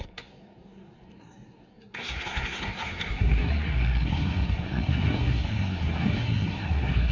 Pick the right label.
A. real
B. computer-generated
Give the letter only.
B